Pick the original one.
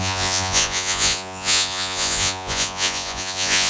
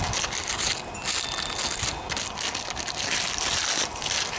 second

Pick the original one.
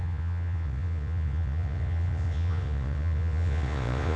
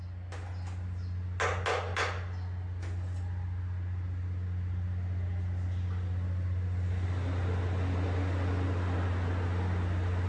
second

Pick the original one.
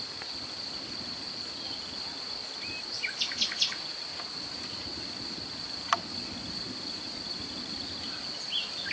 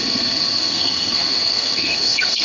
first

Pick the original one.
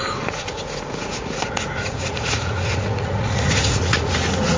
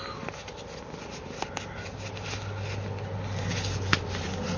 second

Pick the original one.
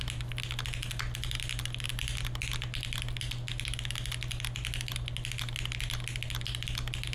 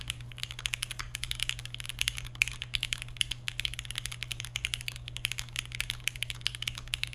first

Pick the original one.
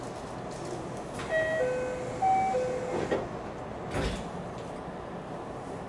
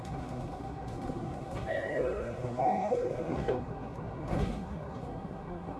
first